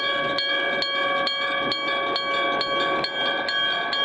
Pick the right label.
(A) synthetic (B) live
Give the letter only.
B